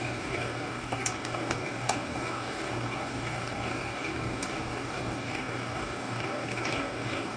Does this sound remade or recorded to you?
remade